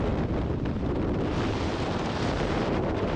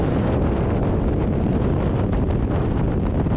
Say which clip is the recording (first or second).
second